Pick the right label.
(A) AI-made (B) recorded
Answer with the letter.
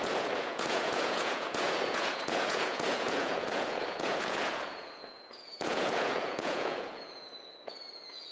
A